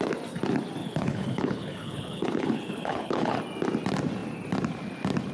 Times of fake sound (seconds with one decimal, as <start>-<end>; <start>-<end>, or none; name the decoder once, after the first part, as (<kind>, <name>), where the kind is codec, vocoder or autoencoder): 0.8-3.4 (codec, HILCodec)